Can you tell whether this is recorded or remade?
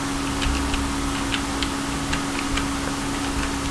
recorded